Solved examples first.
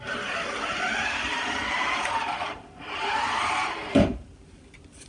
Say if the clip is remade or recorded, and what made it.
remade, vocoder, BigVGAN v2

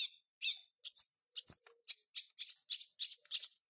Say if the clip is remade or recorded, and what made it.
recorded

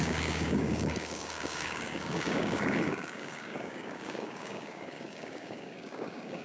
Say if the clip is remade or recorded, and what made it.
remade, codec, DAC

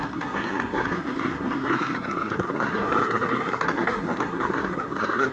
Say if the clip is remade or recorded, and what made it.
remade, codec, SNAC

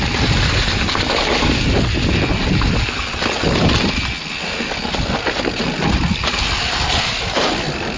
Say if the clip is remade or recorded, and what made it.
recorded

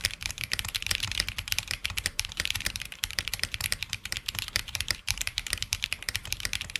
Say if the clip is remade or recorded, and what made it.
remade, vocoder, BigVGAN v2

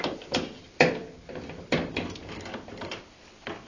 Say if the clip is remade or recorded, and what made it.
remade, vocoder, BigVGAN v2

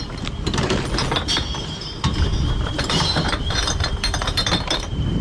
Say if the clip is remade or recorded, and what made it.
remade, vocoder, BigVGAN v2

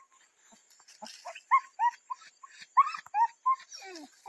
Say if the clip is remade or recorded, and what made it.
recorded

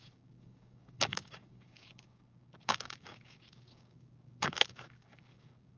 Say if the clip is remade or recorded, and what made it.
remade, codec, DAC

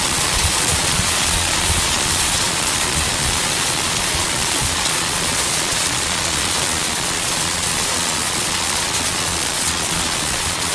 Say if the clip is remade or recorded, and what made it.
remade, vocoder, Vocos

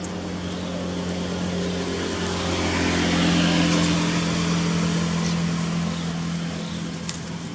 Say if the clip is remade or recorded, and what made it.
recorded